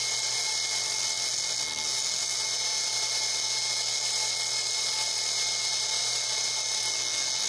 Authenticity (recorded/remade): recorded